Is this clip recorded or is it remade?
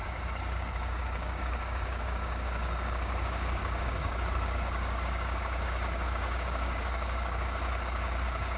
remade